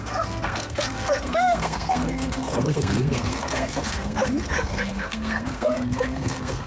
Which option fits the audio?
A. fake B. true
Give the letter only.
A